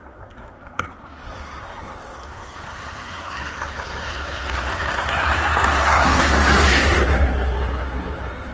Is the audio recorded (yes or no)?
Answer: no